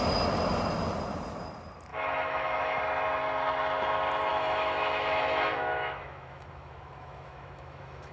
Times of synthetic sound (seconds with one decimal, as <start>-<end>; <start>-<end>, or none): 1.9-2.8; 4.3-8.1